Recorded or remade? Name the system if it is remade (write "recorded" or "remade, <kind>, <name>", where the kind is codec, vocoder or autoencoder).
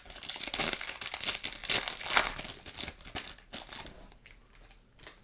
recorded